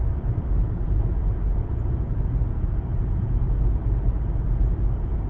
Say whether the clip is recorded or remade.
recorded